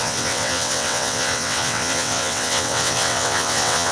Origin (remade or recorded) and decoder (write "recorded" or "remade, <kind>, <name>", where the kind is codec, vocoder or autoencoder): remade, vocoder, WaveNeXt